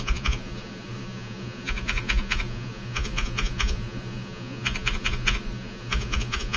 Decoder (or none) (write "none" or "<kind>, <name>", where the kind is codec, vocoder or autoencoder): vocoder, Vocos